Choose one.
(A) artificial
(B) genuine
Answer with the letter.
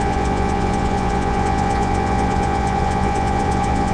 A